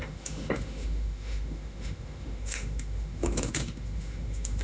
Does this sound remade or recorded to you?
remade